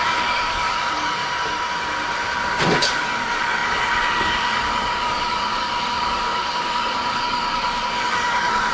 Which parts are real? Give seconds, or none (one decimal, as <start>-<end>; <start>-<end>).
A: 1.2-2.8